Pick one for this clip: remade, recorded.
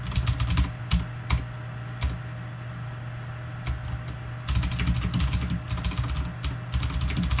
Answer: recorded